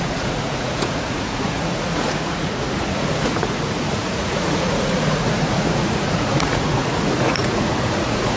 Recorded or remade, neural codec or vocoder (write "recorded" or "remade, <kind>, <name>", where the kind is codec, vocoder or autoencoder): remade, vocoder, Vocos